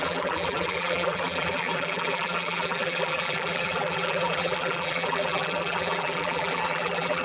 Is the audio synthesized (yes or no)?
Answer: yes